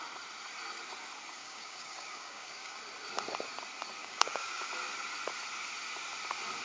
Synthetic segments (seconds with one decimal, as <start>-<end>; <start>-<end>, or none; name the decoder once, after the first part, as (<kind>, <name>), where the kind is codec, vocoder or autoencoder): 1.4-2.8 (codec, DAC); 4.0-4.7